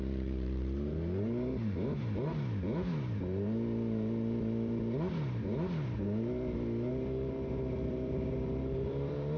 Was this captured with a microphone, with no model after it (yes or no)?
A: no